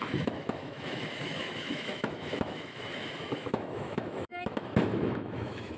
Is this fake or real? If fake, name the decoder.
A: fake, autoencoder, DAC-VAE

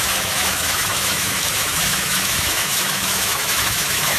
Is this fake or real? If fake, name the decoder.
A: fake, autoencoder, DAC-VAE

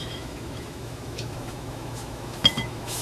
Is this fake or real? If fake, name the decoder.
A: fake, autoencoder, DAC-VAE